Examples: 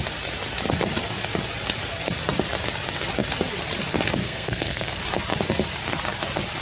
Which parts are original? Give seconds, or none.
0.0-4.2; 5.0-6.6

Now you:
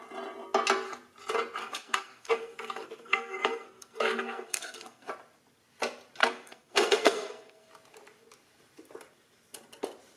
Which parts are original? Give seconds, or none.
0.0-1.6; 5.1-6.2; 7.7-10.2

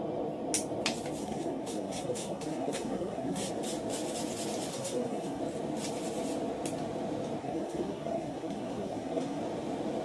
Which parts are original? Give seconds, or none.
0.0-1.2; 3.5-4.7; 5.4-7.4; 9.4-10.0

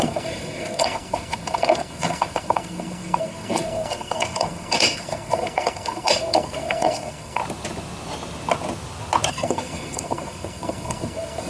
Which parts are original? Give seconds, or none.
7.4-9.3

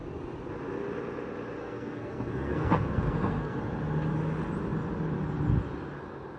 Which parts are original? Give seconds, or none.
0.0-1.6; 3.6-6.4

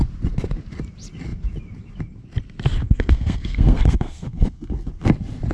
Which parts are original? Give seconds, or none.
0.0-2.8; 4.9-5.5

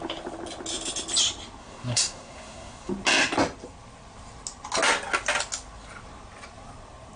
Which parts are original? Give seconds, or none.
0.0-1.6; 2.9-7.2

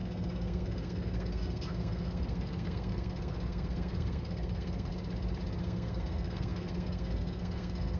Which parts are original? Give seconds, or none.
4.9-5.6